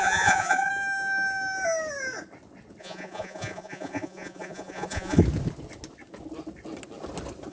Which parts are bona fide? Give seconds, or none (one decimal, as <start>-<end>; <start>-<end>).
0.7-2.8; 5.2-7.5